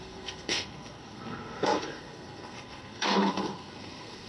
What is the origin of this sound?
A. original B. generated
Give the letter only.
B